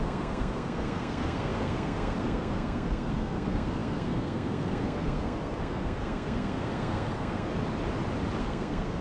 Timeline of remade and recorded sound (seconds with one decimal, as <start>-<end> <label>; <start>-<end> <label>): 0.0-7.5 remade; 7.5-8.4 recorded; 8.4-9.0 remade